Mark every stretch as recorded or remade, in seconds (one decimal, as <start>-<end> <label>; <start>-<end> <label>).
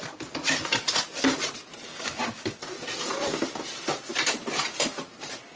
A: 0.0-1.9 recorded; 1.9-2.6 remade; 2.6-5.6 recorded